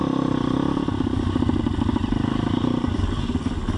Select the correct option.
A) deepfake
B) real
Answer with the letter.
B